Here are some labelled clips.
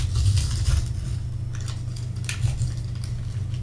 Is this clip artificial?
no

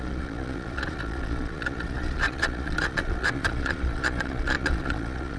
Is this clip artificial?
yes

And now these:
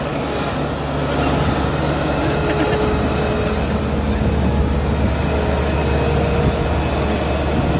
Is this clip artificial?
no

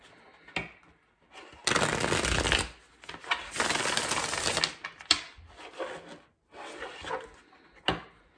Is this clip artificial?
no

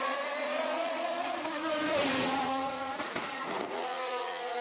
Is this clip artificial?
yes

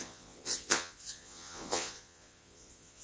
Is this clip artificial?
yes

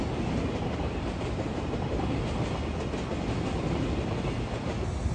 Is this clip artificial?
no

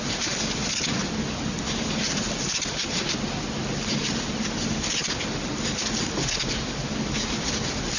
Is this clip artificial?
no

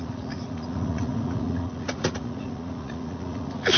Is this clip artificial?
yes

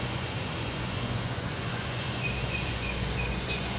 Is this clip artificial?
yes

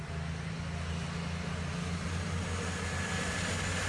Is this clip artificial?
no